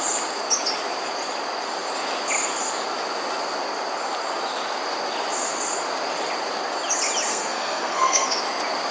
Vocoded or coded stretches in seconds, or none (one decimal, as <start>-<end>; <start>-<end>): 7.3-8.4